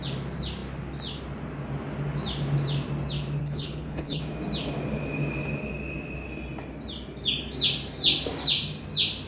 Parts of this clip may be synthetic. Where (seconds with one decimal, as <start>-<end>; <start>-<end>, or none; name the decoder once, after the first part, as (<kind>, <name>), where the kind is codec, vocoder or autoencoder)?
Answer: 3.4-4.2 (codec, HILCodec)